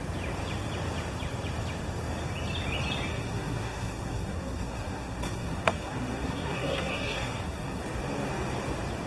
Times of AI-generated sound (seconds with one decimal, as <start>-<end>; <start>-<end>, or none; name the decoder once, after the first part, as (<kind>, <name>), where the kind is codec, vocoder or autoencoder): 3.1-7.8 (codec, SNAC)